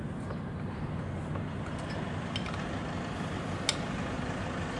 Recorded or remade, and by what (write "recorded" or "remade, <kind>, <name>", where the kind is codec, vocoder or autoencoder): recorded